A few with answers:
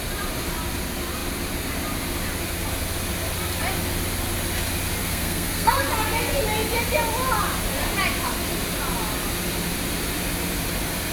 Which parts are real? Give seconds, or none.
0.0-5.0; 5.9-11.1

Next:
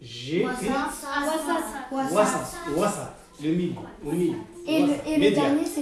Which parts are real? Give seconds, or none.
0.0-5.8

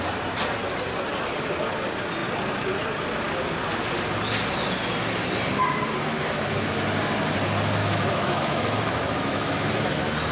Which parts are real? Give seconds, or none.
0.0-7.8; 9.9-10.3